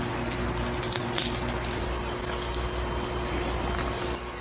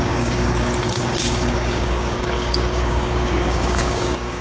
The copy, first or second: second